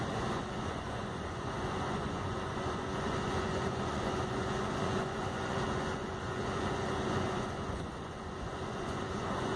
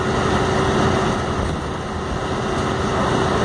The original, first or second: second